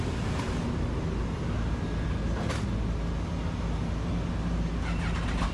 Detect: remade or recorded recorded